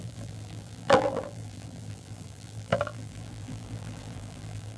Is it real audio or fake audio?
fake